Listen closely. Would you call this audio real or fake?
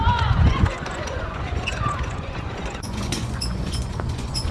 fake